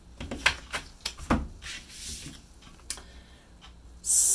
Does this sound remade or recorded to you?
recorded